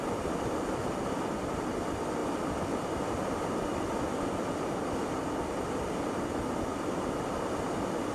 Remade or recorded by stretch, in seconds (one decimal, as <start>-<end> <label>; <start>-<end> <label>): 0.0-8.1 recorded